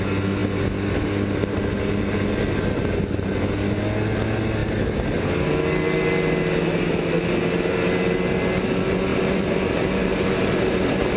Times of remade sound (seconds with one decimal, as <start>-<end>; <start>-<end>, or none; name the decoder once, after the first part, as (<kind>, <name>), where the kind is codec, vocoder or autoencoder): 9.1-11.2 (vocoder, BigVGAN v2)